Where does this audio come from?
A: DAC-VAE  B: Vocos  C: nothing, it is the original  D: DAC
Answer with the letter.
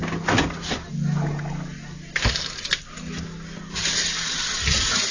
C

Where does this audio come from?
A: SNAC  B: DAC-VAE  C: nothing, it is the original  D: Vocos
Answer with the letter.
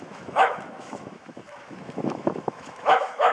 B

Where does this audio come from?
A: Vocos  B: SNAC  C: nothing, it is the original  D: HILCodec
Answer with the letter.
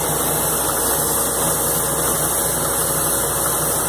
C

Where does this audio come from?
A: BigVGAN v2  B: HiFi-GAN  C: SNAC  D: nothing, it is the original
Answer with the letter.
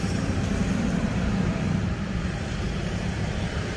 A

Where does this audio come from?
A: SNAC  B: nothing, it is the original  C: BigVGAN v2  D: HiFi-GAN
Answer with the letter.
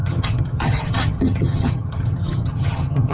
D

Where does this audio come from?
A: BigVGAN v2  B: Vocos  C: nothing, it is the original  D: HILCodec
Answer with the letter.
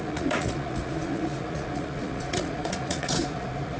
B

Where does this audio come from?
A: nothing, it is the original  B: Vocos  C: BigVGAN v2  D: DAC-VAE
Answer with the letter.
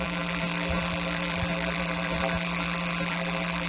C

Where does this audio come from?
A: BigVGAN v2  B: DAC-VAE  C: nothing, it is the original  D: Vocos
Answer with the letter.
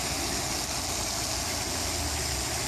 C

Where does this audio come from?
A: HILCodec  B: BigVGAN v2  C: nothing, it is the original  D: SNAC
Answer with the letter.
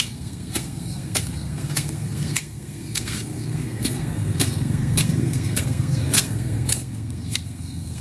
D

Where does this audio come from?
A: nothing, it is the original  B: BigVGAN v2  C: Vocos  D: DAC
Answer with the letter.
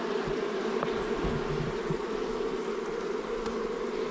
A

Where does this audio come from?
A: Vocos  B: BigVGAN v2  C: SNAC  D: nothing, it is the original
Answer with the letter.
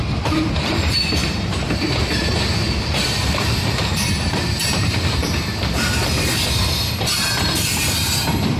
B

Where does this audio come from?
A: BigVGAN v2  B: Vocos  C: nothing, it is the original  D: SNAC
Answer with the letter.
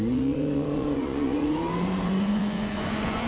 B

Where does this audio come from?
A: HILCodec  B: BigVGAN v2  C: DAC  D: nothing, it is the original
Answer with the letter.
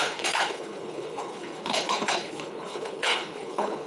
A